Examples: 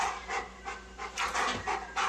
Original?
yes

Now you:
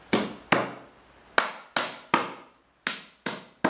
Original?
yes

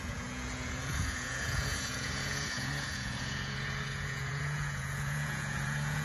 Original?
no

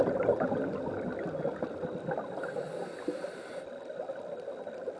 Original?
yes